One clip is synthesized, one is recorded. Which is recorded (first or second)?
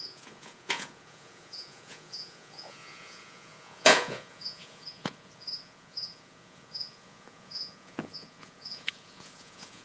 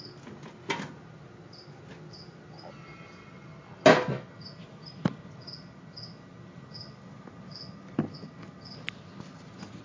second